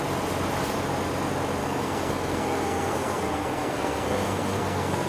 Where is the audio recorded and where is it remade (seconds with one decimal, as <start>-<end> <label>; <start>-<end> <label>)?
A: 0.0-1.6 recorded; 1.6-5.1 remade